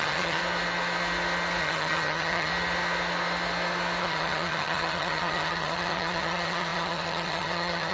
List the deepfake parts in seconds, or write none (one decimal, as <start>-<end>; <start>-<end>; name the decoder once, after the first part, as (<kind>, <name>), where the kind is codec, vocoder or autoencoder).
0.0-0.4 (vocoder, HiFi-GAN); 1.6-2.5; 4.0-7.9